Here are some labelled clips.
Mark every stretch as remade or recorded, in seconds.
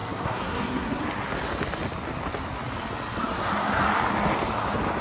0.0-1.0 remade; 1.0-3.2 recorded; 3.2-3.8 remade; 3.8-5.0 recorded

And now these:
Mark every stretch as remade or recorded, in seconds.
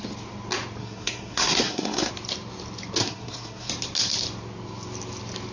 0.0-0.8 recorded; 0.8-2.1 remade; 2.1-3.0 recorded; 3.0-3.7 remade; 3.7-5.5 recorded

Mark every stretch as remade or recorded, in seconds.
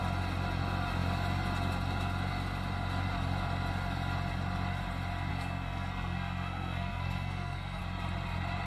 0.0-5.3 recorded; 5.3-7.8 remade; 7.8-8.7 recorded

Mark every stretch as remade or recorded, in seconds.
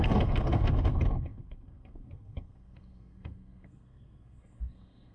0.0-5.1 remade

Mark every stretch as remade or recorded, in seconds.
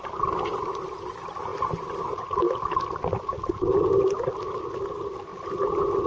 0.0-6.1 recorded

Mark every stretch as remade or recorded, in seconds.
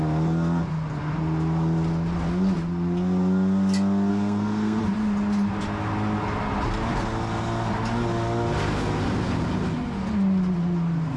0.0-4.1 recorded; 4.1-4.8 remade; 4.8-11.2 recorded